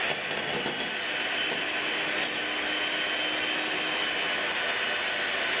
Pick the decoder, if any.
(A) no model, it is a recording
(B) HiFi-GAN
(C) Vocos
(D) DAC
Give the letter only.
A